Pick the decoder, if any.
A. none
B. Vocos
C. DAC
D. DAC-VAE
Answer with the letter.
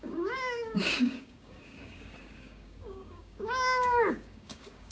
C